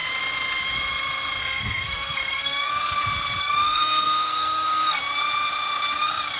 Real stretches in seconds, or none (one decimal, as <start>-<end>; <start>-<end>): 0.0-1.4; 2.8-3.4; 5.0-6.4